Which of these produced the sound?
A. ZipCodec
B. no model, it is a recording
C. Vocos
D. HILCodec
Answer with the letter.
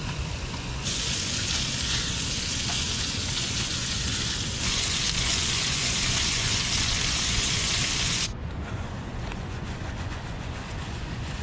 C